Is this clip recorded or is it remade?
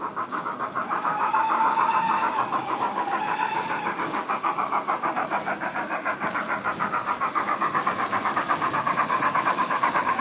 remade